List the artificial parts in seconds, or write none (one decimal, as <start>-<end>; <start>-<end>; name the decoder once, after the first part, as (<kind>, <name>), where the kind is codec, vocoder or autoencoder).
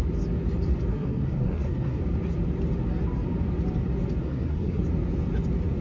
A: 0.9-2.0 (codec, SNAC); 4.2-4.8